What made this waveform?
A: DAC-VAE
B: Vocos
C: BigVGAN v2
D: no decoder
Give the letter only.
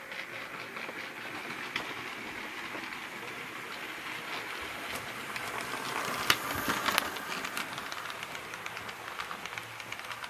D